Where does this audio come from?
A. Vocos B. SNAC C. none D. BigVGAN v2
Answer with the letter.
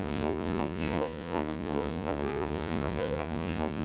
A